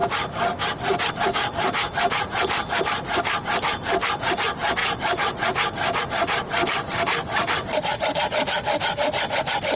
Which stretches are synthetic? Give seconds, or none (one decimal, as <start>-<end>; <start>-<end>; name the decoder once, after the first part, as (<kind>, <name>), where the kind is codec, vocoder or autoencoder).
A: none